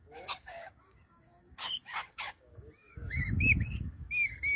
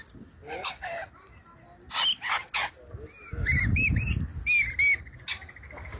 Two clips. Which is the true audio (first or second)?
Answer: second